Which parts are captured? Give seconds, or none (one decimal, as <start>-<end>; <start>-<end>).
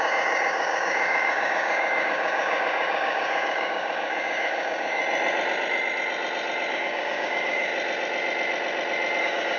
5.0-6.7; 7.7-9.2